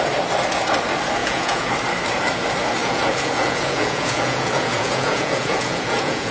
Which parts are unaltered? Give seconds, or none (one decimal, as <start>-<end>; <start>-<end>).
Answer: 0.0-1.2; 1.7-2.8